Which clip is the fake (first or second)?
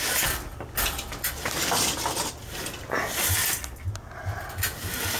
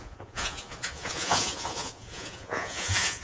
second